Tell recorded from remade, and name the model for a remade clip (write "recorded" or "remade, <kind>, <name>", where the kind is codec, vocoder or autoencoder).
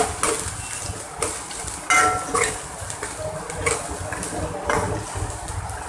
recorded